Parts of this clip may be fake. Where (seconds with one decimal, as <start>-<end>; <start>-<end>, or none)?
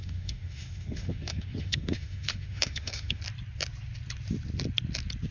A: 0.0-3.2